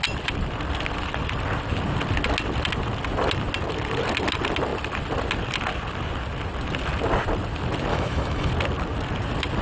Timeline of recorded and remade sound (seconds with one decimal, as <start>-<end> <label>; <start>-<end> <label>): 0.0-7.9 recorded; 7.9-8.5 remade; 8.5-9.6 recorded

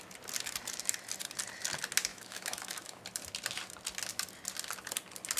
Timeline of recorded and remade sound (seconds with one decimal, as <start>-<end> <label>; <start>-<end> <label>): 0.0-2.1 recorded; 2.1-3.0 remade; 3.0-5.4 recorded

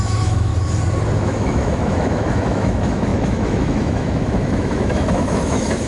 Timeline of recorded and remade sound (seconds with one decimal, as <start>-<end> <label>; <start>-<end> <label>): 0.0-0.5 remade; 0.5-1.2 recorded; 1.2-5.9 remade